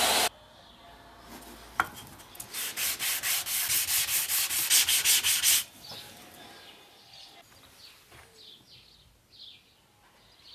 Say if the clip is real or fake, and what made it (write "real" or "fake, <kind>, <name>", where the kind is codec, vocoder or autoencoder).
real